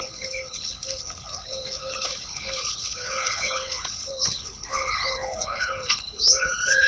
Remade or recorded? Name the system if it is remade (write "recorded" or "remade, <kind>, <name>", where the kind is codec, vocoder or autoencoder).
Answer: remade, codec, HILCodec